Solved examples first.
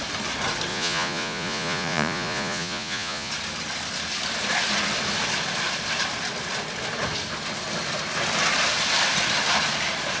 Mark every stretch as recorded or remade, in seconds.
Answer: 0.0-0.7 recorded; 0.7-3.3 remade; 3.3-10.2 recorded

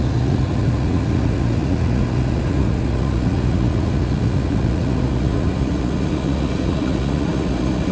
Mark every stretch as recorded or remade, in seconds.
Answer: 0.0-7.9 remade

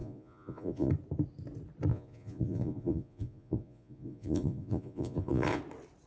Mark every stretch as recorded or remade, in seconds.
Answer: 0.0-0.9 remade; 0.9-1.9 recorded; 1.9-5.6 remade; 5.6-6.1 recorded